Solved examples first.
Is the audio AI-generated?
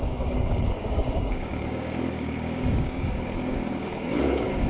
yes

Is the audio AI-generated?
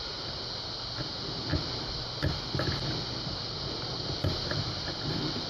no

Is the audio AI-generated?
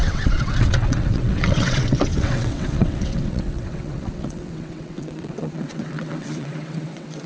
yes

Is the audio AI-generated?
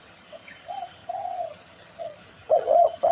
yes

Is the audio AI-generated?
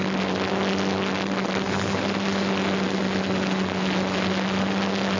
no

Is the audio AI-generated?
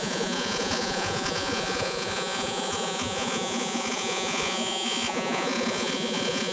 yes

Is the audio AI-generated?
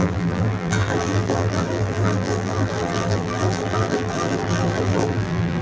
yes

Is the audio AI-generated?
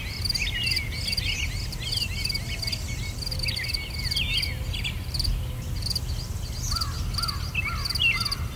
no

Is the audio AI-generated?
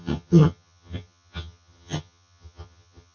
yes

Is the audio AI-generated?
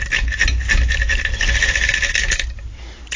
no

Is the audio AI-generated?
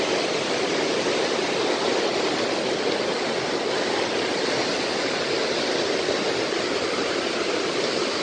no